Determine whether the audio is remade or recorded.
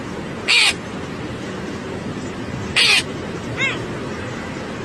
recorded